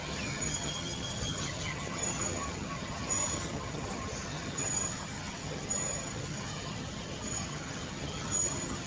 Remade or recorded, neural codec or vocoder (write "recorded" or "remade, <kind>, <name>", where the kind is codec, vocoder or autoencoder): remade, vocoder, HiFi-GAN